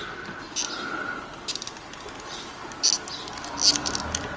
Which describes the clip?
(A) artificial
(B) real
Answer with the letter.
B